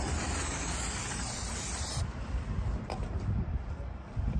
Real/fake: fake